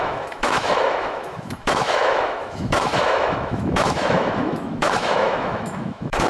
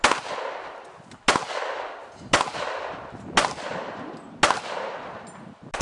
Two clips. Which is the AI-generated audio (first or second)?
first